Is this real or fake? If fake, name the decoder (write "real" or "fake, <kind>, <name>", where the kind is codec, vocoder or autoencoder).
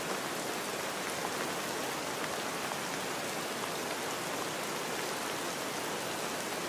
real